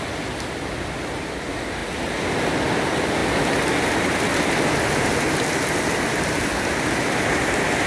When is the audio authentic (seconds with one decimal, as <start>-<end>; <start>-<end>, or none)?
0.0-7.9